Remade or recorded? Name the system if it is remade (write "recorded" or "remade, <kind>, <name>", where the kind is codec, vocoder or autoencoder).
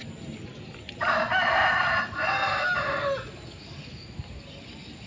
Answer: recorded